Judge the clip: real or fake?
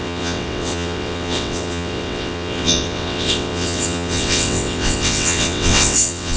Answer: fake